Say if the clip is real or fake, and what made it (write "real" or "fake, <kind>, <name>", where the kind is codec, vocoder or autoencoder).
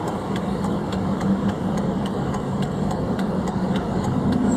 fake, codec, DAC